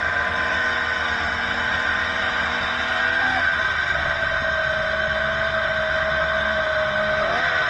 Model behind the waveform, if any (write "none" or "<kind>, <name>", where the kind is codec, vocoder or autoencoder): none